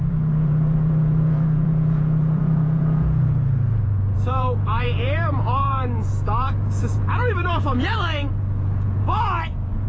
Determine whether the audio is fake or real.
fake